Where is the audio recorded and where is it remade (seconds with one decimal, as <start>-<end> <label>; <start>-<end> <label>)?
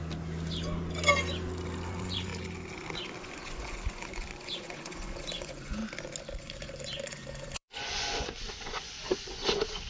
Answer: 0.0-1.9 recorded; 1.9-2.3 remade; 2.3-3.2 recorded; 3.2-5.8 remade; 5.8-6.4 recorded; 6.4-9.9 remade